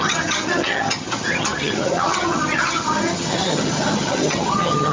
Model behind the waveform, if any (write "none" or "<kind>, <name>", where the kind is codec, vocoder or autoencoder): vocoder, HiFi-GAN